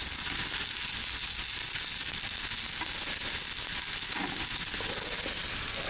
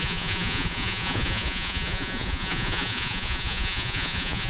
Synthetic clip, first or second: second